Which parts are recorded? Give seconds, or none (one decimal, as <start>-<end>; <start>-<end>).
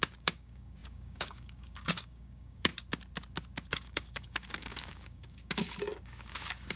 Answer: 2.7-3.7